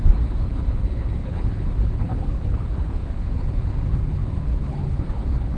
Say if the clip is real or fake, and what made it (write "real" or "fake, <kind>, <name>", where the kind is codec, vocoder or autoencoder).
fake, codec, HILCodec